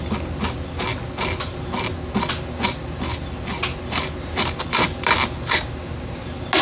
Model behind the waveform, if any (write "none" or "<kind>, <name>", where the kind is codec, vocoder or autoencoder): none